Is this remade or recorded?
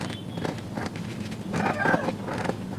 recorded